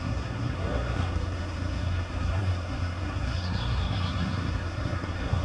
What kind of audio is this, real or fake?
fake